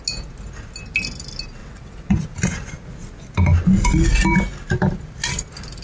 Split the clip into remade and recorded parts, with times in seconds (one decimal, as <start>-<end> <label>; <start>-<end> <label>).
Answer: 0.0-1.6 recorded; 1.6-2.2 remade; 2.2-5.8 recorded